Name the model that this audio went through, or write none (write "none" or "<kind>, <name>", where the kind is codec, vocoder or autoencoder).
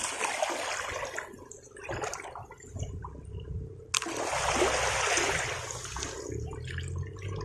none